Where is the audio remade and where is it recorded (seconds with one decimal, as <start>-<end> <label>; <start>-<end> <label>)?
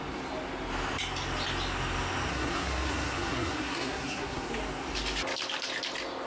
0.0-2.3 recorded; 2.3-4.5 remade; 4.5-6.3 recorded